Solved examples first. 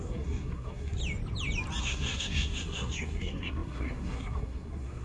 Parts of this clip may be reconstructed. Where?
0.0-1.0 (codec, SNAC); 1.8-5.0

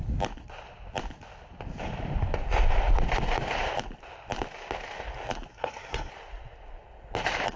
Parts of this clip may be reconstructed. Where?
5.5-6.1 (codec, SNAC)

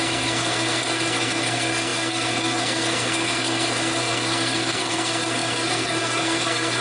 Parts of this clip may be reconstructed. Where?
0.0-6.8 (codec, SNAC)

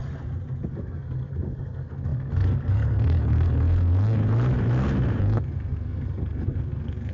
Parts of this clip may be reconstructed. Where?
0.7-4.2 (codec, SNAC); 5.2-7.1